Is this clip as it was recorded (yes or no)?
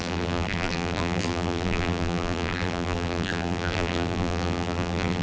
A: no